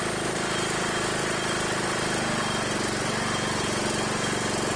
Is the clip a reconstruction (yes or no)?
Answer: no